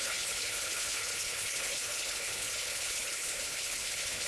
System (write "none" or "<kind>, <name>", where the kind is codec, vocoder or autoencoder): codec, HILCodec